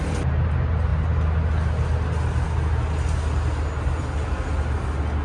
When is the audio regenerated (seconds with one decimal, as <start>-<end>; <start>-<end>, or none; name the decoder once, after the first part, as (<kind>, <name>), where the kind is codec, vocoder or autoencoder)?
none